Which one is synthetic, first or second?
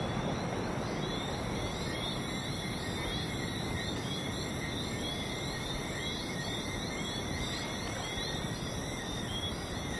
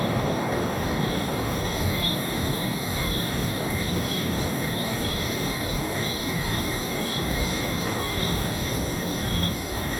second